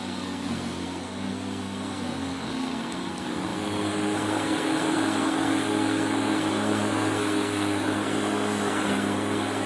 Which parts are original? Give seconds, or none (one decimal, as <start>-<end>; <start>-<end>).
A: none

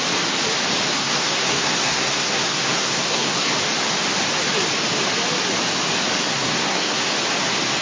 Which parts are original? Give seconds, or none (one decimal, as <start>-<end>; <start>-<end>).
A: 0.0-1.0; 3.5-6.2; 7.1-7.8

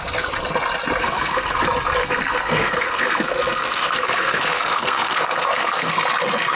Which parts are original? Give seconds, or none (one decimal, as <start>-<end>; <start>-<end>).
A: 0.0-1.0; 1.6-2.0; 6.0-6.6

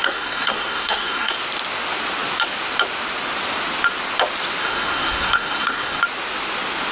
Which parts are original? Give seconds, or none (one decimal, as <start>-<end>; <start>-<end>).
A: 1.3-4.6; 6.0-6.9

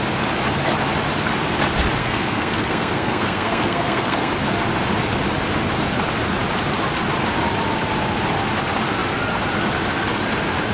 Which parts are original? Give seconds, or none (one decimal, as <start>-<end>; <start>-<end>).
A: 0.0-2.0; 4.3-10.7